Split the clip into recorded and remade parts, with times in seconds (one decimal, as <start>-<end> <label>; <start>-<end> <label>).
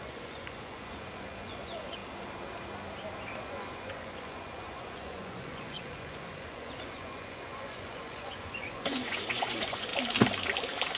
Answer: 0.0-2.0 remade; 2.0-3.4 recorded; 3.4-9.9 remade; 9.9-11.0 recorded